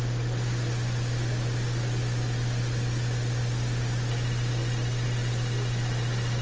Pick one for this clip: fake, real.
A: real